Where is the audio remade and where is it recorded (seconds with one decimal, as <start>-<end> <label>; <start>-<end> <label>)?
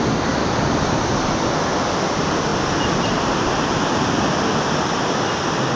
0.0-2.5 recorded; 2.5-3.8 remade; 3.8-5.8 recorded